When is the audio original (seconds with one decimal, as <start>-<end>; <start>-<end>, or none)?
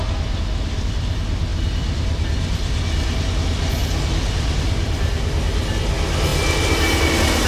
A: 0.0-1.5; 3.3-7.5